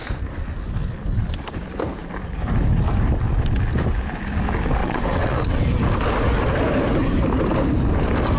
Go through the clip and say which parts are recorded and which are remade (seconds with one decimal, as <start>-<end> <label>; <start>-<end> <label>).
0.0-4.8 recorded; 4.8-5.6 remade; 5.6-8.4 recorded